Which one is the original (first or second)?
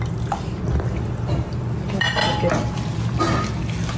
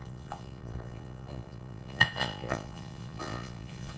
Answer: first